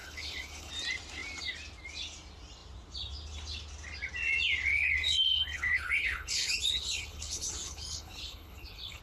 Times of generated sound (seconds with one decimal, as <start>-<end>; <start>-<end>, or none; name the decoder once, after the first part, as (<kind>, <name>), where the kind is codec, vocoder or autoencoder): 0.0-0.7 (codec, HILCodec); 4.7-9.0